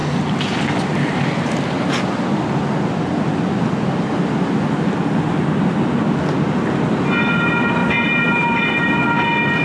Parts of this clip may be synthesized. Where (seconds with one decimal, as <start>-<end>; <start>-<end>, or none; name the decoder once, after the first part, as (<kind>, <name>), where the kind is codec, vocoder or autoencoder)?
7.8-8.7 (vocoder, BigVGAN v2)